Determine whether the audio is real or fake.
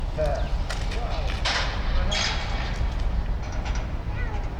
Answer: real